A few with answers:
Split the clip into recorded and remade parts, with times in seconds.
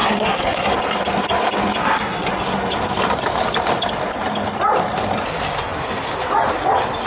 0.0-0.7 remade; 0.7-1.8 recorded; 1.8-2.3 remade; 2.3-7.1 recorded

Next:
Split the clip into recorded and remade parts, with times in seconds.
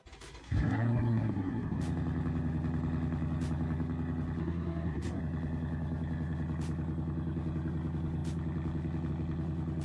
0.0-0.4 recorded; 0.4-1.8 remade; 1.8-4.4 recorded; 4.4-5.2 remade; 5.2-9.8 recorded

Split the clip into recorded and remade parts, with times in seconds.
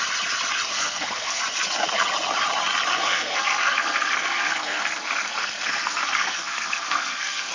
0.0-0.7 recorded; 0.7-1.4 remade; 1.4-2.9 recorded; 2.9-7.5 remade